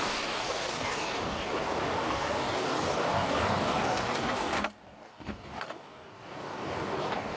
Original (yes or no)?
no